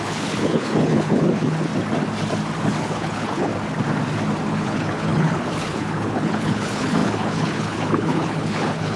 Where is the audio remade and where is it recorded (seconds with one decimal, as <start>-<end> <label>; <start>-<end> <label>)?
0.0-1.7 remade; 1.7-2.7 recorded; 2.7-3.5 remade; 3.5-4.5 recorded; 4.5-9.0 remade

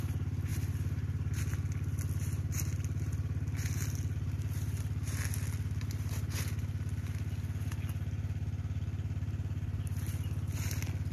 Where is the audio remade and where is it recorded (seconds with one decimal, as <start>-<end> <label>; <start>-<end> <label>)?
0.0-11.1 recorded

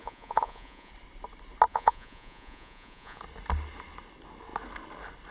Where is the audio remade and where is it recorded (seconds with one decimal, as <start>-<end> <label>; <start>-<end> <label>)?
0.0-0.9 remade; 0.9-1.7 recorded; 1.7-3.2 remade; 3.2-5.3 recorded

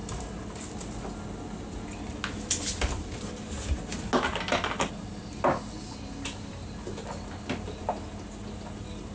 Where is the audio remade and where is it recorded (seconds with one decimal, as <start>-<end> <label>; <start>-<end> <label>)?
0.0-9.1 recorded